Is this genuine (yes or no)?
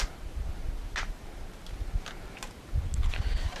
yes